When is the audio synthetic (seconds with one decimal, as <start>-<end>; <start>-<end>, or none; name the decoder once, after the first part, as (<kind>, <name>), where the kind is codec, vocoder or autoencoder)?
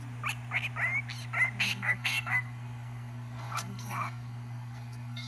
1.7-5.3 (codec, SNAC)